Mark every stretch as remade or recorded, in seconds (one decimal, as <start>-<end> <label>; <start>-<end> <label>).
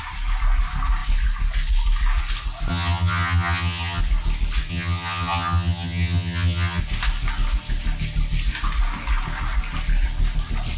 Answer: 0.0-2.7 recorded; 2.7-4.0 remade; 4.0-4.7 recorded; 4.7-6.8 remade; 6.8-10.8 recorded